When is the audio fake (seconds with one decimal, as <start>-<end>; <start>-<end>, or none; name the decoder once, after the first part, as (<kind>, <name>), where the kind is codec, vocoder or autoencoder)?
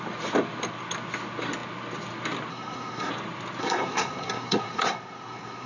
2.5-3.1 (codec, SNAC); 3.6-5.7